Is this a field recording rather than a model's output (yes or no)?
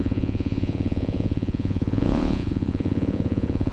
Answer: no